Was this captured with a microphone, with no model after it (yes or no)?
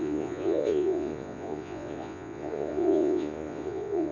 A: no